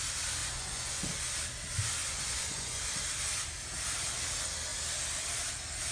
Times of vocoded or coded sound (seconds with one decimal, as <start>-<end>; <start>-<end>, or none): 0.4-1.0; 2.0-2.8